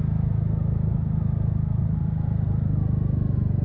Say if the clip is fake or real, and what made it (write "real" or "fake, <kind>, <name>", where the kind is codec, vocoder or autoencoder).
real